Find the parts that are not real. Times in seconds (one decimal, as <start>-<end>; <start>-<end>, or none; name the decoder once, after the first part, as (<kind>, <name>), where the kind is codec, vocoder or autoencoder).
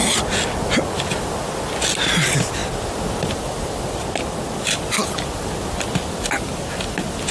none